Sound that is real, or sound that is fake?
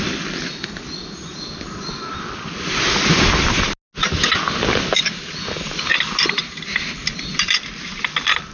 real